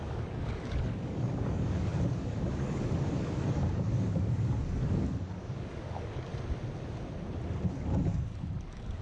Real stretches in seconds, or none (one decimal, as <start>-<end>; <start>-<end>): 6.3-7.7